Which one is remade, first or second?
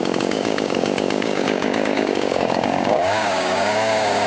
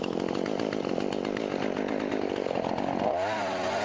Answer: first